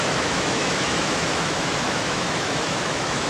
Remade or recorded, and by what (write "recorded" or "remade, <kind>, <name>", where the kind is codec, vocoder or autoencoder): remade, autoencoder, DAC-VAE